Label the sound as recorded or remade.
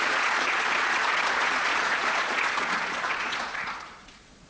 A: remade